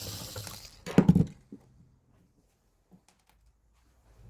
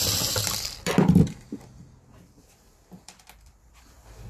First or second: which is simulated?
second